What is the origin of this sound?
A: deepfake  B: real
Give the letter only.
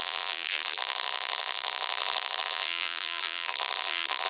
A